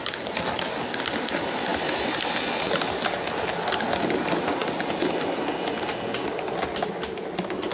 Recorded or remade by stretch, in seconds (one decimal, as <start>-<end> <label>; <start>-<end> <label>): 0.0-7.7 recorded